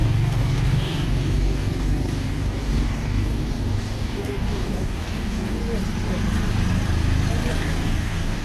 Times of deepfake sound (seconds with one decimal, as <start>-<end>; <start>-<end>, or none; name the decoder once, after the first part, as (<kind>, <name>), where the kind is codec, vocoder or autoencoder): 0.0-5.6 (codec, DAC); 7.5-8.4